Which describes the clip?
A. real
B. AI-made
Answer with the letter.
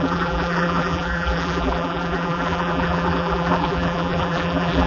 B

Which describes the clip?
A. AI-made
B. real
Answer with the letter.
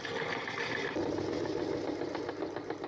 B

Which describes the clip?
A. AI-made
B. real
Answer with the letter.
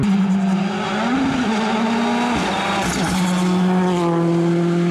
B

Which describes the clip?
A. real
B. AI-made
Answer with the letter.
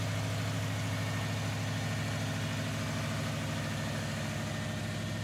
A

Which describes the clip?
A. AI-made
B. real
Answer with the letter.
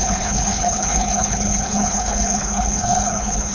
A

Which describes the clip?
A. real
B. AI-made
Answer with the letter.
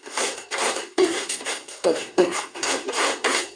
B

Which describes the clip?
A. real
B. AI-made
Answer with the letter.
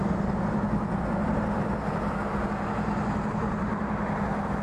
A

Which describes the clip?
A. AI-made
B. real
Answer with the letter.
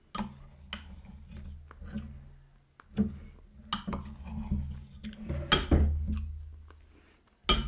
B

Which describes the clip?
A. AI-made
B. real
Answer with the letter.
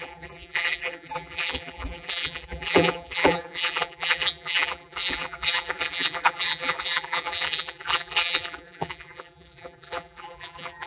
A